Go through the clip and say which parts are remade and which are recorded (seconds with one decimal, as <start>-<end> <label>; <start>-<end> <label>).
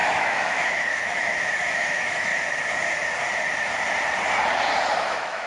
0.0-2.3 remade; 2.3-5.0 recorded; 5.0-5.5 remade